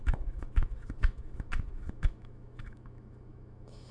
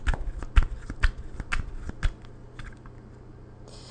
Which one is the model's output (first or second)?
first